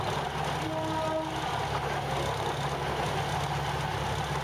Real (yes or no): yes